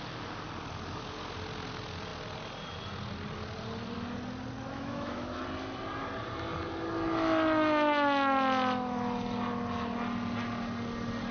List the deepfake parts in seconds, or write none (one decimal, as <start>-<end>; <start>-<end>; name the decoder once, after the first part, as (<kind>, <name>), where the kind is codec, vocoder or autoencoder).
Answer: 4.7-5.4 (autoencoder, DAC-VAE)